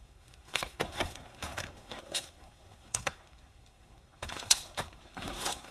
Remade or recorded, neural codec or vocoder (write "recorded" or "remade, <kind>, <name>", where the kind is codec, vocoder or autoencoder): remade, codec, SNAC